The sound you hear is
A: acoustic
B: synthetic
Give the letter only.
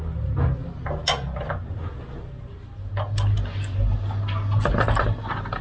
A